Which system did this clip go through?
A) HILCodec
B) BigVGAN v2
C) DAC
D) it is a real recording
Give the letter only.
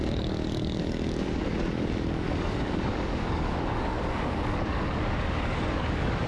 C